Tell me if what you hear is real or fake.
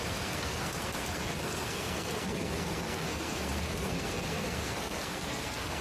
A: fake